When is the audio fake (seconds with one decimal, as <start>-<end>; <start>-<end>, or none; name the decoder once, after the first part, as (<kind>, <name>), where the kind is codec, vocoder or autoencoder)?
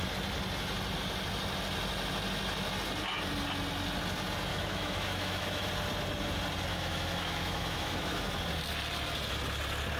4.5-5.7 (autoencoder, DAC-VAE); 6.7-8.2